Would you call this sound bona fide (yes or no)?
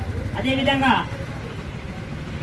yes